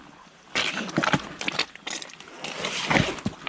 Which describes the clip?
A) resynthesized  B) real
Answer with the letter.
B